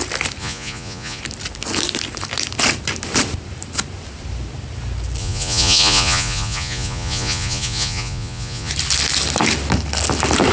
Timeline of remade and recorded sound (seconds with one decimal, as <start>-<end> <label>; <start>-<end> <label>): 0.0-0.4 recorded; 0.4-1.2 remade; 1.2-5.2 recorded; 5.2-8.7 remade; 8.7-10.5 recorded